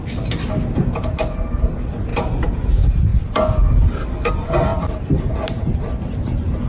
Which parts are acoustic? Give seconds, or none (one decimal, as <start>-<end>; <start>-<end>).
0.0-2.1; 2.6-4.7; 5.3-6.7